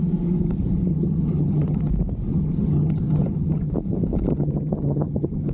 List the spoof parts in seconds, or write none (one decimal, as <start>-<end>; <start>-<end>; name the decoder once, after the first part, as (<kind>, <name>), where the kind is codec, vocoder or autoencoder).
0.9-1.9 (vocoder, HiFi-GAN); 2.3-3.7; 4.3-5.5

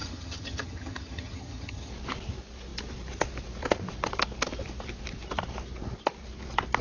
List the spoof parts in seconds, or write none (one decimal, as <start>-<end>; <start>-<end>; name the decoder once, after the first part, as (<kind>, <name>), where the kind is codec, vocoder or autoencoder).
0.0-1.9 (vocoder, HiFi-GAN)